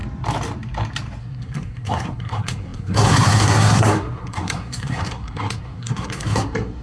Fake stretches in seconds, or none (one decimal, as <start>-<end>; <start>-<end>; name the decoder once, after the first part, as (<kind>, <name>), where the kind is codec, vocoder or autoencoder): 1.2-6.8 (codec, SNAC)